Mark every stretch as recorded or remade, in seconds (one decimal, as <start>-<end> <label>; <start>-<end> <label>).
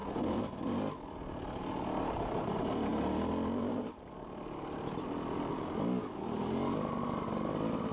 0.0-7.9 recorded